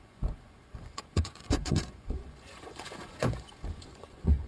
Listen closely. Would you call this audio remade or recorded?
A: remade